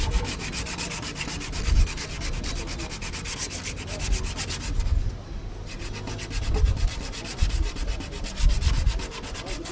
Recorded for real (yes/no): yes